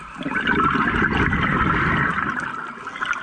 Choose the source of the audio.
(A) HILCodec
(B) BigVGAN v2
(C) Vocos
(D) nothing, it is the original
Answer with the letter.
D